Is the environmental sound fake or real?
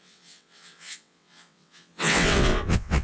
fake